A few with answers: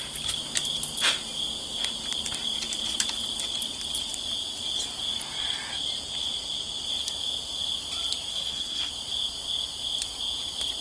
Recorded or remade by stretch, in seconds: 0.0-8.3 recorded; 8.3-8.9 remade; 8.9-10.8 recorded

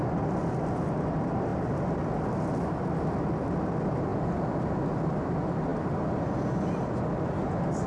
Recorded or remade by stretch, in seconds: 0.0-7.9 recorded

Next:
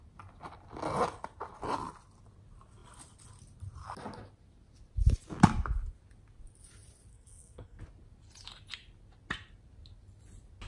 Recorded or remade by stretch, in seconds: 0.0-7.1 recorded; 7.1-7.8 remade; 7.8-10.7 recorded

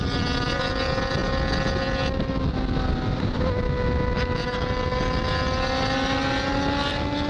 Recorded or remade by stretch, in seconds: 0.0-7.3 recorded

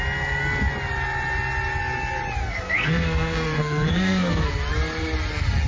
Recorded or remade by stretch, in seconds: 0.0-2.4 recorded; 2.4-4.5 remade; 4.5-5.7 recorded

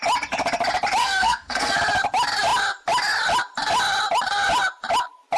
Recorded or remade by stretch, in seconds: 0.0-1.0 recorded; 1.0-1.8 remade; 1.8-5.4 recorded

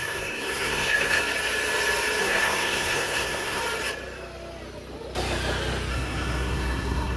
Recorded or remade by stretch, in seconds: 0.0-1.2 remade; 1.2-2.2 recorded; 2.2-3.6 remade; 3.6-5.9 recorded; 5.9-7.2 remade

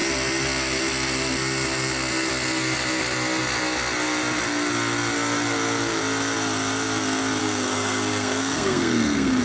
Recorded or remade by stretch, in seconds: 0.0-7.4 recorded; 7.4-9.4 remade